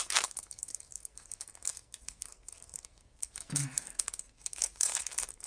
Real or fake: fake